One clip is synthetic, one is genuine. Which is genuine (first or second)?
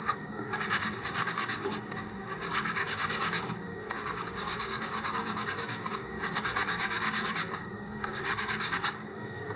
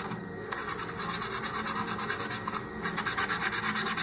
second